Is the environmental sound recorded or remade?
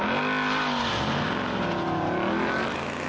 recorded